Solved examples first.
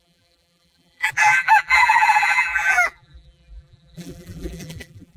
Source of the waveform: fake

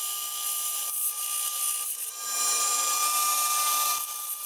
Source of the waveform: real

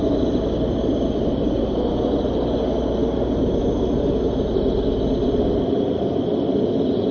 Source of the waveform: real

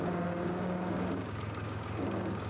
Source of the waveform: fake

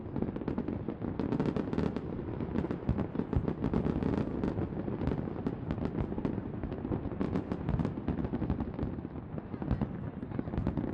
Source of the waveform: real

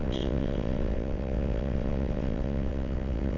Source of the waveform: fake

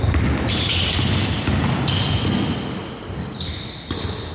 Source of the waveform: real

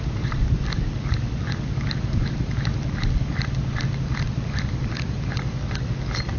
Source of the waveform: real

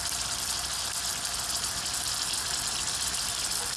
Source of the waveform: real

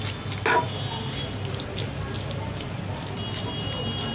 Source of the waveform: real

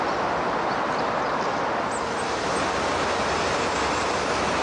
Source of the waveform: real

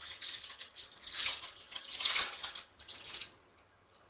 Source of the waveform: fake